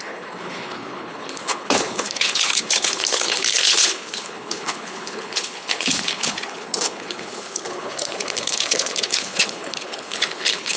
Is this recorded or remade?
remade